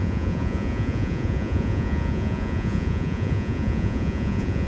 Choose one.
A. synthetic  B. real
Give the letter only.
A